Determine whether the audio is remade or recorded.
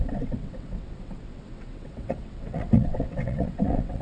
remade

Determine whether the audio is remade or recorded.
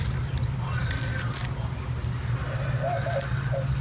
recorded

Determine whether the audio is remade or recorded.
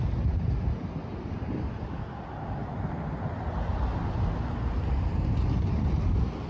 recorded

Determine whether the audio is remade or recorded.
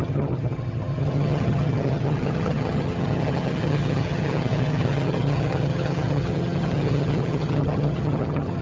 remade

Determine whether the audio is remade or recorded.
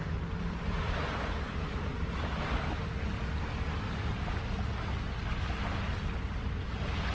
recorded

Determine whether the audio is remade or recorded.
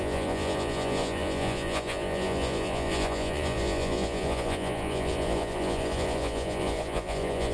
remade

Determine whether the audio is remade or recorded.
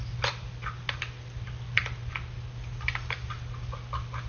recorded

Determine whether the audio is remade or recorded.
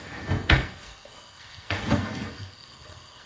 remade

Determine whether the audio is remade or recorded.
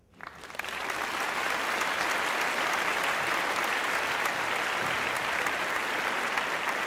recorded